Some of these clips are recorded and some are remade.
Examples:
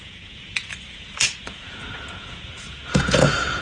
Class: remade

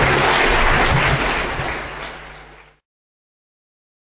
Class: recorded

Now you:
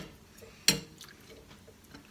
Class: recorded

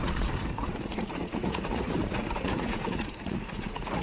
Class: remade